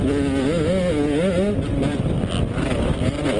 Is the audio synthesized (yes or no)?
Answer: no